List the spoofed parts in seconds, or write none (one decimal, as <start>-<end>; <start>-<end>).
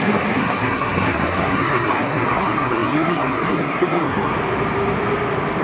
0.0-4.3